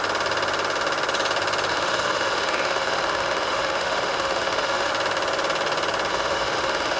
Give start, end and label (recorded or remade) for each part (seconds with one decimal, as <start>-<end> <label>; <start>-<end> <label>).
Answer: 0.0-1.7 recorded; 1.7-4.9 remade; 4.9-6.1 recorded; 6.1-7.0 remade